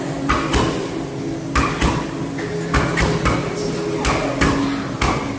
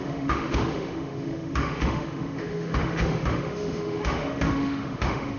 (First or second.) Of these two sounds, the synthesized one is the second